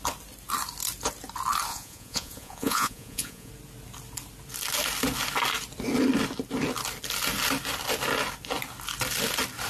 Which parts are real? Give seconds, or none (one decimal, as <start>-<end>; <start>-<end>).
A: 0.0-1.7; 3.5-9.7